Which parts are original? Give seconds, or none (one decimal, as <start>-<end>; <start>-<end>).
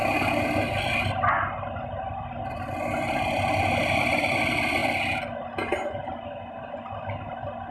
0.0-7.7